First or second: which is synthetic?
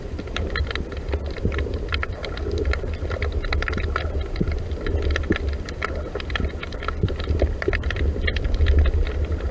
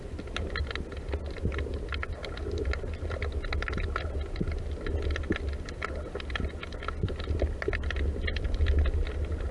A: first